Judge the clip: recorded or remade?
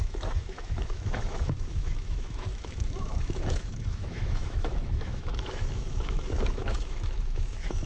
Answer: remade